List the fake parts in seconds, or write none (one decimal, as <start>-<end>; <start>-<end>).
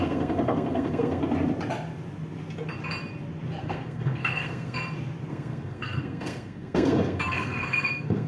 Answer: 0.0-1.2; 3.6-4.8; 5.3-8.3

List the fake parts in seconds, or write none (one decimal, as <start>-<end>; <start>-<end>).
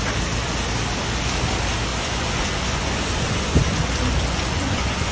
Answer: 1.9-5.1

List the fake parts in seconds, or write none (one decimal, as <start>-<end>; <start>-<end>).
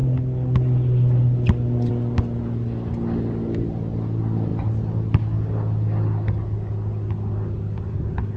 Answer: none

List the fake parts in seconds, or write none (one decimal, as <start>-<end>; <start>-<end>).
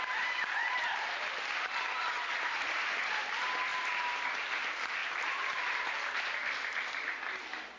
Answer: none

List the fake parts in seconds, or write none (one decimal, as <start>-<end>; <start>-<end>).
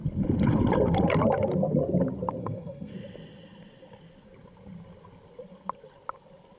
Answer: 2.4-2.9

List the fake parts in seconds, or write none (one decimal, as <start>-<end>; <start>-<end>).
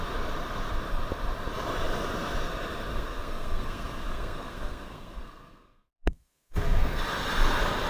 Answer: 2.9-7.0